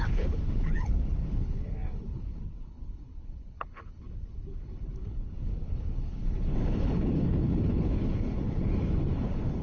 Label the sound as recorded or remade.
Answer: remade